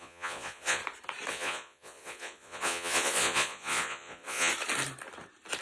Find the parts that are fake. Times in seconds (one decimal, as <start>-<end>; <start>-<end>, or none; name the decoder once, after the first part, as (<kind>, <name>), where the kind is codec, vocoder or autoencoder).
0.0-0.8 (vocoder, Vocos); 1.3-4.5